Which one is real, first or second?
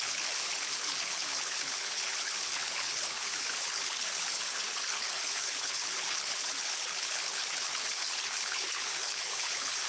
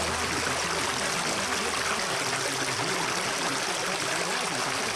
second